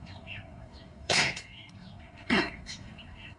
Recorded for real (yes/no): no